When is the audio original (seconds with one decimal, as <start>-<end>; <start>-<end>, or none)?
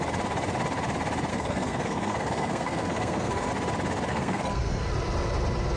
0.0-1.3; 3.5-4.1; 4.9-5.8